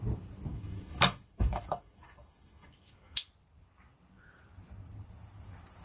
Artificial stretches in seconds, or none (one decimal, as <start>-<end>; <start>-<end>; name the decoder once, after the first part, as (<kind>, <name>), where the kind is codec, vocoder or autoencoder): 0.5-3.3 (autoencoder, DAC-VAE)